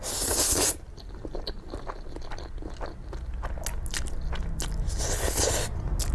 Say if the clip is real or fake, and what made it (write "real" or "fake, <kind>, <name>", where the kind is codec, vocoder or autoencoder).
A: real